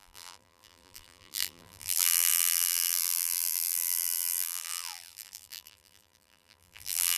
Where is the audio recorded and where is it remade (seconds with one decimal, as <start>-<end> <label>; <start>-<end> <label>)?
0.0-7.2 remade